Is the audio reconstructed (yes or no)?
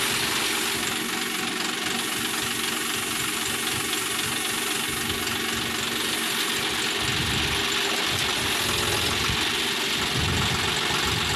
no